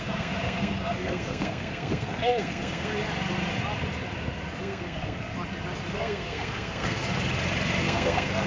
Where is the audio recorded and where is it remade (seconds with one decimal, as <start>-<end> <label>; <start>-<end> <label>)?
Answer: 0.0-2.9 remade; 2.9-4.6 recorded; 4.6-5.3 remade; 5.3-5.9 recorded; 5.9-7.0 remade; 7.0-7.8 recorded; 7.8-8.5 remade